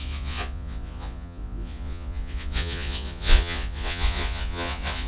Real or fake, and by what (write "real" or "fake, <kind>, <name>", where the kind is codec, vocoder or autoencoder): fake, vocoder, Vocos